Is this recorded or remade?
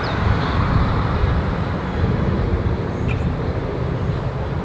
remade